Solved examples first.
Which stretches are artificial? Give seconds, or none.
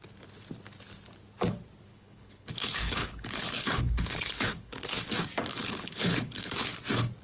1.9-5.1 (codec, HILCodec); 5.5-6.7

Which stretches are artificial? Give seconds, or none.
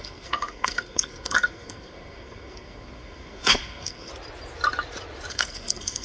0.0-4.1 (codec, SNAC); 5.3-6.0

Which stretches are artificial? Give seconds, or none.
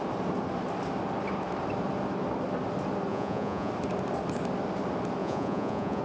3.1-3.7 (vocoder, Vocos); 5.2-6.0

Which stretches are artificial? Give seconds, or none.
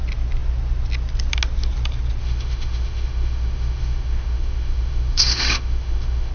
2.2-6.3 (autoencoder, DAC-VAE)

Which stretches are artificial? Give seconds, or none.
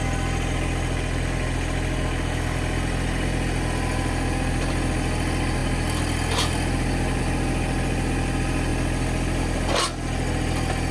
none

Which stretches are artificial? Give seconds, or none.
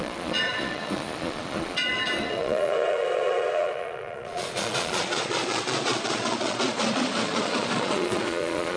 0.0-8.8 (vocoder, Vocos)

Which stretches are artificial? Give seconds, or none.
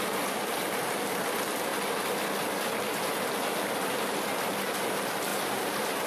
5.3-6.1 (vocoder, BigVGAN v2)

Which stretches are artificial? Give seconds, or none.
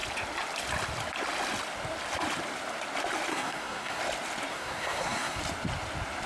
3.3-4.0 (codec, SNAC); 4.5-5.4